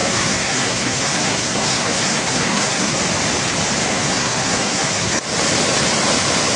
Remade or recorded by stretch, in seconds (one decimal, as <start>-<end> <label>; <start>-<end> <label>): 0.0-3.0 remade; 3.0-3.8 recorded; 3.8-5.2 remade; 5.2-6.6 recorded